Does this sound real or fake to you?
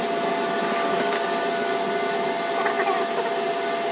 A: real